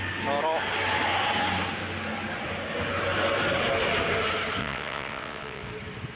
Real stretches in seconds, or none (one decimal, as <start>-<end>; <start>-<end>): 0.0-4.6; 5.7-6.2